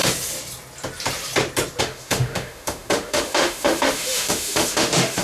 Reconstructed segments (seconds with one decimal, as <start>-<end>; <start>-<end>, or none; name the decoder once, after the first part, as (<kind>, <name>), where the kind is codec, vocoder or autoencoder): 1.8-5.2 (autoencoder, DAC-VAE)